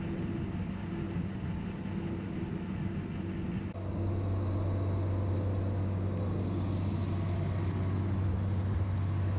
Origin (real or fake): real